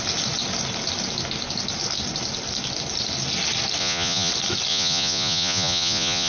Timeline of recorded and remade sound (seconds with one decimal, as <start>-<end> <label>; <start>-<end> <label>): 0.0-3.8 recorded; 3.8-4.3 remade; 4.3-4.7 recorded; 4.7-6.3 remade